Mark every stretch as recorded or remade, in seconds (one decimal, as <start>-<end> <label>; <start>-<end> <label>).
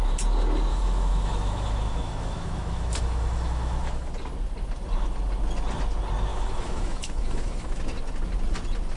0.0-0.7 recorded; 0.7-4.1 remade; 4.1-6.3 recorded; 6.3-7.8 remade; 7.8-9.0 recorded